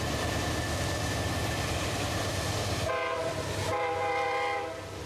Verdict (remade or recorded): remade